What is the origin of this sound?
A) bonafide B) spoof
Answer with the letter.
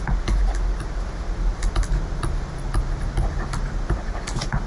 A